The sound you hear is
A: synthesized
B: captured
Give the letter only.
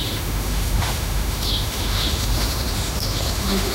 A